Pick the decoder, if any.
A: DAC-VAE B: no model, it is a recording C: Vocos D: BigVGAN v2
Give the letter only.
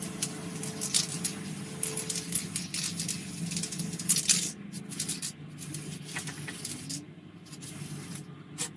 B